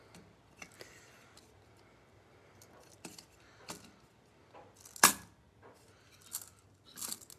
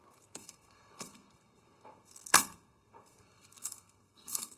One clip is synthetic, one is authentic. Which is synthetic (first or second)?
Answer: second